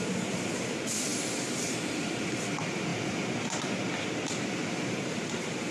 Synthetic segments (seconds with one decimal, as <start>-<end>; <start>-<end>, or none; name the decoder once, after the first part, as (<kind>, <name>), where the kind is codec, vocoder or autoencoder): 0.0-5.7 (vocoder, BigVGAN v2)